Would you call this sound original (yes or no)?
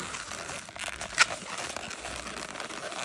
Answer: yes